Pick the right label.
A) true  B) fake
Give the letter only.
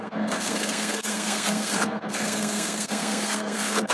B